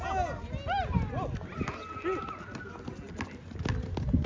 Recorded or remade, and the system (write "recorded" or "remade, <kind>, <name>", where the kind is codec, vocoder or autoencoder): recorded